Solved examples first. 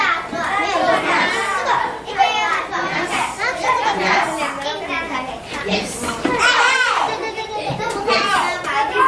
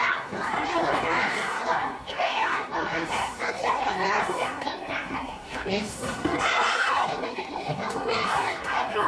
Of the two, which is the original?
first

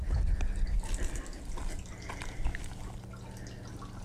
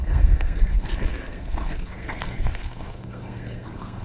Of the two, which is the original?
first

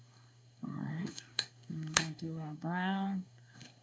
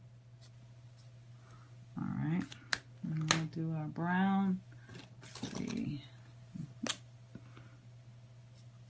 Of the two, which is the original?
second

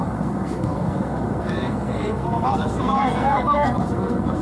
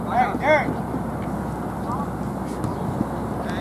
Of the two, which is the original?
second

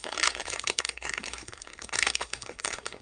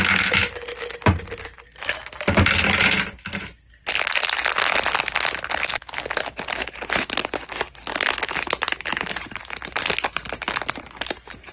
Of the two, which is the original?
second